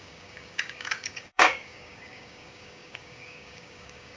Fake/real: fake